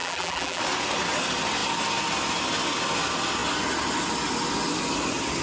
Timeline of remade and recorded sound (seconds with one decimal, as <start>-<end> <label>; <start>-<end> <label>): 0.0-0.6 remade; 0.6-5.4 recorded